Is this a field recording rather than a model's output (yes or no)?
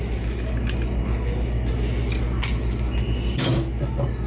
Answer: yes